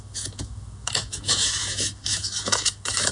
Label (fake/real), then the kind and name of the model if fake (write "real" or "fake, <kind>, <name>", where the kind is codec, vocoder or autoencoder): fake, autoencoder, DAC-VAE